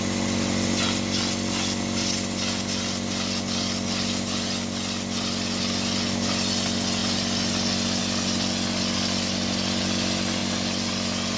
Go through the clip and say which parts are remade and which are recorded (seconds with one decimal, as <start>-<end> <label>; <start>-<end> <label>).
0.0-11.4 recorded